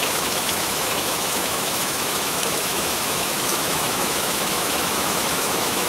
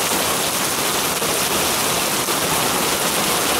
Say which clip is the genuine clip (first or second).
second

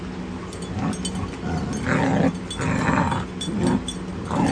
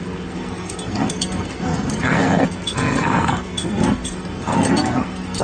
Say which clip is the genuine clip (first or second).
first